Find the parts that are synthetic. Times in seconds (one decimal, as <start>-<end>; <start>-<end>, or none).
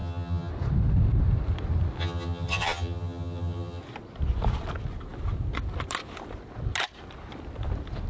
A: 0.0-0.5; 2.0-3.8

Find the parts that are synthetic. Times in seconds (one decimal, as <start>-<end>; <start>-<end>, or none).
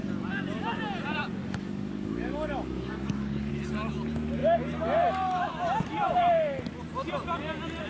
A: 1.4-3.5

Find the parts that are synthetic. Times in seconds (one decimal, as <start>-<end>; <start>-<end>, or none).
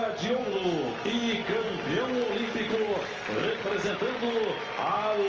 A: none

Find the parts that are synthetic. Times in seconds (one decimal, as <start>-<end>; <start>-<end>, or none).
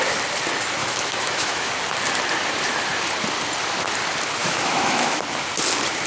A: 0.8-1.7; 4.4-5.2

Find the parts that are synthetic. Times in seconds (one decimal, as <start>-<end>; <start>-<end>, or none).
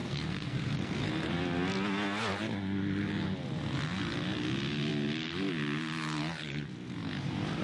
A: 0.0-1.1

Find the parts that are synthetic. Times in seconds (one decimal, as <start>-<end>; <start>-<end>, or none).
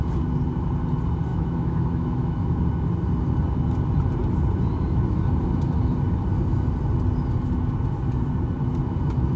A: 1.3-2.6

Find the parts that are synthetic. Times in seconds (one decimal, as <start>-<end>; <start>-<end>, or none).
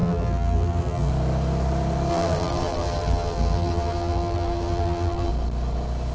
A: 0.0-1.1; 2.1-5.3